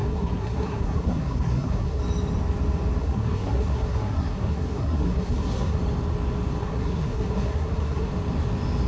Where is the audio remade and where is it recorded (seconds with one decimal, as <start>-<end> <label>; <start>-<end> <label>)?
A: 0.0-2.0 remade; 2.0-3.0 recorded; 3.0-5.8 remade; 5.8-6.6 recorded; 6.6-8.1 remade; 8.1-8.9 recorded